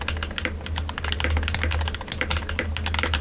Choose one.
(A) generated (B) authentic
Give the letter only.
B